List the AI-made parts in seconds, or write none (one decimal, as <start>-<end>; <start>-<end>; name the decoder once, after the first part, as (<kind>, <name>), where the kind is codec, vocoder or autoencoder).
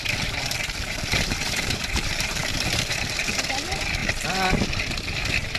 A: 0.0-3.4 (vocoder, BigVGAN v2)